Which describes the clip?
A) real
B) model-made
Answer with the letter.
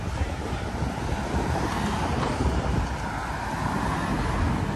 A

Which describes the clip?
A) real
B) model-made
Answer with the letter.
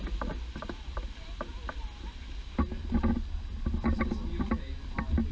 A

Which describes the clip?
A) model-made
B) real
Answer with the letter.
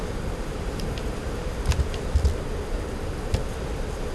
B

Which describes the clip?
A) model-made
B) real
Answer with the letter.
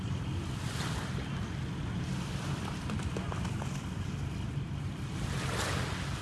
B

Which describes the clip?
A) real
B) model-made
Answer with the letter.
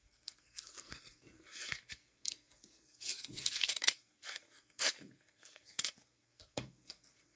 B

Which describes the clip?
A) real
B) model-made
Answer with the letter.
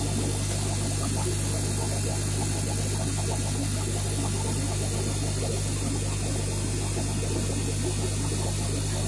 A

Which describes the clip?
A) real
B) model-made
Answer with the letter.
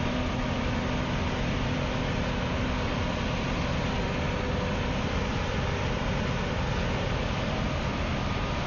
A